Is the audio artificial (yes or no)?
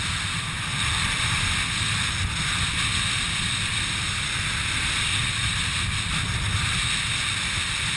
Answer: no